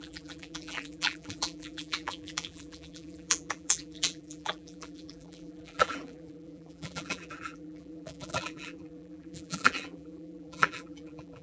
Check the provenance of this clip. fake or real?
fake